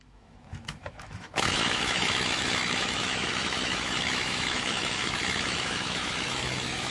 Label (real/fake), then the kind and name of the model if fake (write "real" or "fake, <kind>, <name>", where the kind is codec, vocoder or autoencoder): fake, autoencoder, DAC-VAE